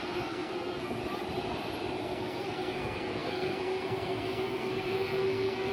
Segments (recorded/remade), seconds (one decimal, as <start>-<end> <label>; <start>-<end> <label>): 0.0-1.0 remade; 1.0-2.0 recorded; 2.0-5.7 remade